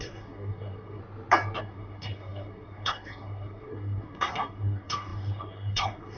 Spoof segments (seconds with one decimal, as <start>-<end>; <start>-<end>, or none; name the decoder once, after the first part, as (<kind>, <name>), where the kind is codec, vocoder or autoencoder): 0.0-1.0 (codec, SNAC); 1.6-6.2